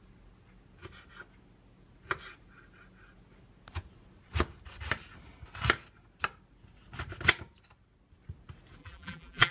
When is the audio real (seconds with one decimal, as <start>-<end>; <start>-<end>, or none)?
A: 0.0-8.8